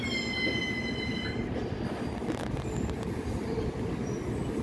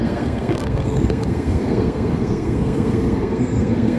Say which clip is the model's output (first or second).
second